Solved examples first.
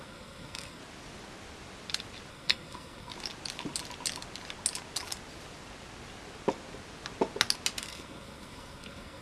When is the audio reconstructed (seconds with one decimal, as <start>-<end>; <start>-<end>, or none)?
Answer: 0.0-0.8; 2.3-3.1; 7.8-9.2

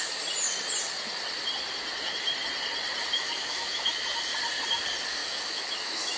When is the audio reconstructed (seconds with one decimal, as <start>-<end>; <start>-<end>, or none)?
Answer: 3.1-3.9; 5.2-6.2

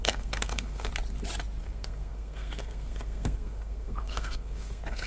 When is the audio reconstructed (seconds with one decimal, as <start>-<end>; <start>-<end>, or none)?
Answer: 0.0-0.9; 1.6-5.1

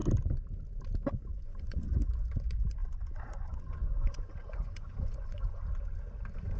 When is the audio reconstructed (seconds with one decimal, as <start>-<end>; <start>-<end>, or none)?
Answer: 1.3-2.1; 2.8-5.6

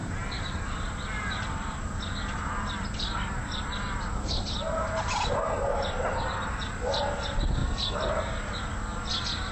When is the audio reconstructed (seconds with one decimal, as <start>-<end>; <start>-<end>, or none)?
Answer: 0.0-0.6; 5.7-6.6

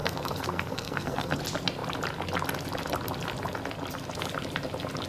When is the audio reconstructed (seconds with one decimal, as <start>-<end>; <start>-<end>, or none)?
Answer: 0.0-1.4